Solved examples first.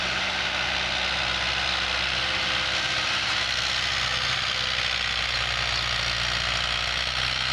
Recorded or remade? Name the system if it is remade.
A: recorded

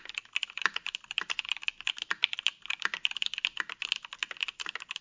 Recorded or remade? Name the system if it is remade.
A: recorded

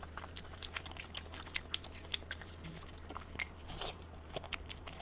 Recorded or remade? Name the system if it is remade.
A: recorded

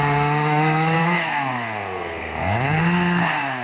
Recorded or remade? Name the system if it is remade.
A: remade, codec, SNAC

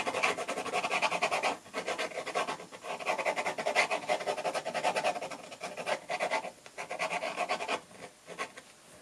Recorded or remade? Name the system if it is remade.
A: recorded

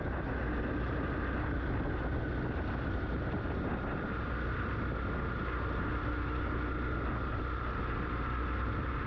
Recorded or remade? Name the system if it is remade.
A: recorded